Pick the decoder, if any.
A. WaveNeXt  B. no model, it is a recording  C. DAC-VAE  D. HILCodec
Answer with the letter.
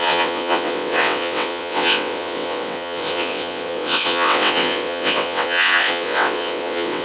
A